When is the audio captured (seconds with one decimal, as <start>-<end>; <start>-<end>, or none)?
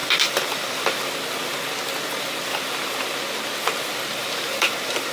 1.0-4.2